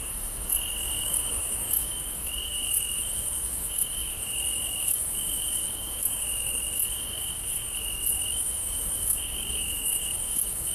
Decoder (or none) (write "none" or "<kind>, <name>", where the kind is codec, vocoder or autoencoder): codec, DAC